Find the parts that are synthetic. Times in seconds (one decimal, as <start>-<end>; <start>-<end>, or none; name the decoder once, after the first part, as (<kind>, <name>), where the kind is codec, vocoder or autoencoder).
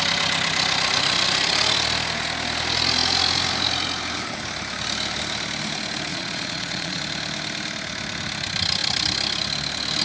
6.1-7.0 (vocoder, Vocos)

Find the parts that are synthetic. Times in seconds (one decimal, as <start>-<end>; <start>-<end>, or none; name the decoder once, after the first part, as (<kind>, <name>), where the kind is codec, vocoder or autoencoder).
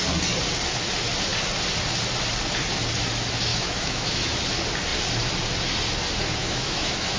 3.5-4.4 (autoencoder, DAC-VAE); 6.4-7.2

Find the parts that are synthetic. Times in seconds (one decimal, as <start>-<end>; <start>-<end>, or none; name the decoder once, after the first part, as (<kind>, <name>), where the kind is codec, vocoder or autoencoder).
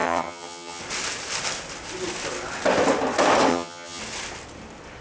0.0-0.8 (vocoder, HiFi-GAN); 3.5-4.0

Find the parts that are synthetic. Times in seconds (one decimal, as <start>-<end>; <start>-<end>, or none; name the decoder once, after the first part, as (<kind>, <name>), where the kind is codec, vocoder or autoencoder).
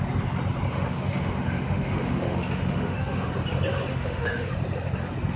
0.7-3.3 (autoencoder, DAC-VAE); 3.9-4.5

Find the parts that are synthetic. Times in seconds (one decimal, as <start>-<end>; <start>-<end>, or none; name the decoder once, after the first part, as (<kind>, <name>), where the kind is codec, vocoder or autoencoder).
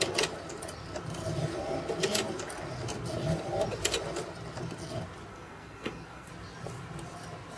5.3-6.3 (codec, SNAC)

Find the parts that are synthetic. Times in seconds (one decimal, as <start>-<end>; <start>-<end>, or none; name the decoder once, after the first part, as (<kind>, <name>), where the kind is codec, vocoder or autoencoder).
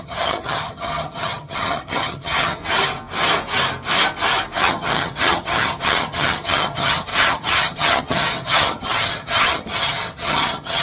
0.0-2.6 (vocoder, HiFi-GAN); 4.6-10.8